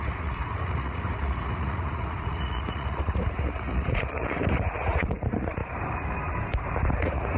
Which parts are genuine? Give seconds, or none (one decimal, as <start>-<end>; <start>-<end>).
5.6-6.9